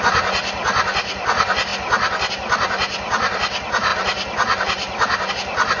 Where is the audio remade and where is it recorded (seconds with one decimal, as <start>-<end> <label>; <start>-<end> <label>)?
0.0-5.8 recorded